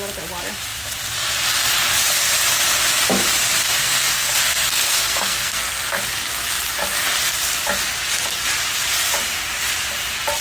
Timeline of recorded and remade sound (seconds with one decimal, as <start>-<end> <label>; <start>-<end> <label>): 0.0-3.8 recorded; 3.8-6.0 remade; 6.0-10.4 recorded